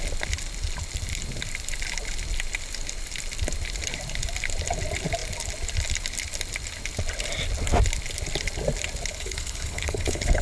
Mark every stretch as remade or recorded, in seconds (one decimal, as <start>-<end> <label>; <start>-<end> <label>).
0.0-9.1 recorded; 9.1-10.4 remade